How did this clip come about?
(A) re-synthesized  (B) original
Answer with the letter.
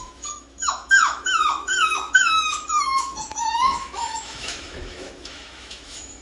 A